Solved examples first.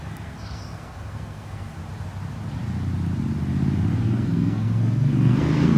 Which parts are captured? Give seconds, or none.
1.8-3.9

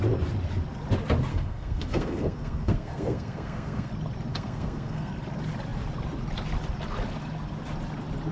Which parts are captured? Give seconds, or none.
0.0-1.3; 3.9-4.3; 5.1-8.3

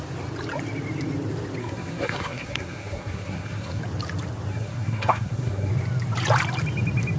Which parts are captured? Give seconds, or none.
0.0-1.6; 3.8-4.5; 5.7-7.2

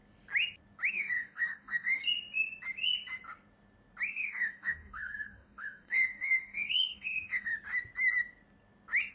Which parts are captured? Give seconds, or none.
0.0-0.9; 2.0-4.1; 7.5-9.1

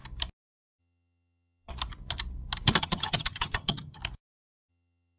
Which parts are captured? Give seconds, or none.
0.0-0.8; 1.7-2.8; 4.0-4.7

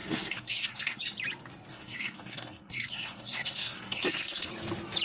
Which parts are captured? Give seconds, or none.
1.0-1.7; 4.5-5.0

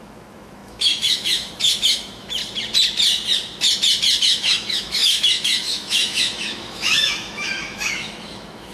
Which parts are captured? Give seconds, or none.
2.4-4.2

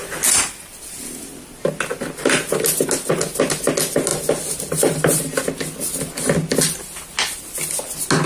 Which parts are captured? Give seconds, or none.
0.0-8.3